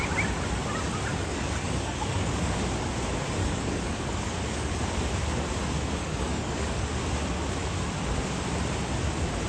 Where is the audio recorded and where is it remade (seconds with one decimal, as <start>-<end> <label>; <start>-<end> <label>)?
0.0-1.1 recorded; 1.1-2.5 remade; 2.5-3.4 recorded; 3.4-4.8 remade; 4.8-6.0 recorded; 6.0-6.9 remade; 6.9-9.5 recorded